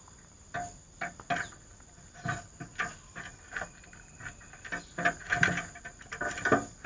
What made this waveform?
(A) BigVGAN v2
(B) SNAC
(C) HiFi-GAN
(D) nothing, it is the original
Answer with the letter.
D